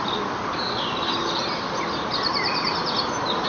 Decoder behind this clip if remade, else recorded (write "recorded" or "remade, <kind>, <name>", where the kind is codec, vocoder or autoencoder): recorded